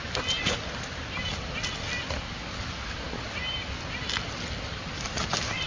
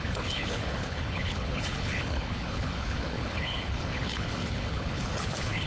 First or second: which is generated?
second